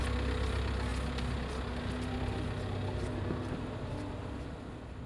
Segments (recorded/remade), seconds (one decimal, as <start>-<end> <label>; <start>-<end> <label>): 0.0-5.1 recorded